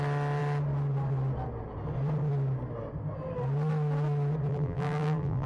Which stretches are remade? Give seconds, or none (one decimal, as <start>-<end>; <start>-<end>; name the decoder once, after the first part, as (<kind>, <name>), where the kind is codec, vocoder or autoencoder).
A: 4.5-5.5 (vocoder, BigVGAN v2)